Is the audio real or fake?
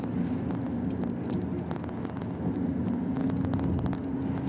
real